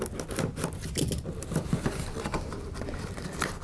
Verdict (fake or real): real